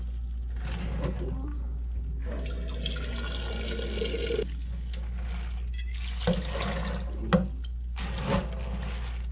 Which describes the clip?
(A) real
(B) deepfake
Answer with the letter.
A